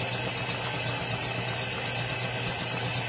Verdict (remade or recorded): recorded